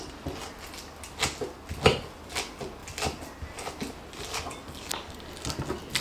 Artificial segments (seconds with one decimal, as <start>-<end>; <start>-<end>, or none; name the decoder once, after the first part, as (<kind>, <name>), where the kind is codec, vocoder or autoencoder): none

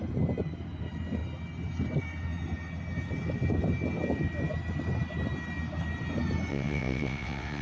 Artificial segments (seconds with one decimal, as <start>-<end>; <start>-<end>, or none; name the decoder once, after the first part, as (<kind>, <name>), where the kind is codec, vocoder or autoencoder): 6.5-7.6 (vocoder, WaveNeXt)

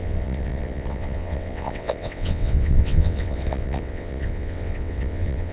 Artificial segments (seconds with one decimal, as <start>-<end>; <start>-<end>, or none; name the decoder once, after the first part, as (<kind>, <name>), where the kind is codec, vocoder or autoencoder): 0.0-5.5 (vocoder, WaveNeXt)